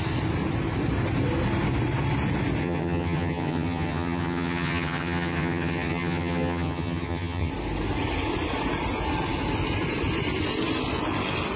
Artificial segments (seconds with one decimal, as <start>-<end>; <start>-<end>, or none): 2.6-7.5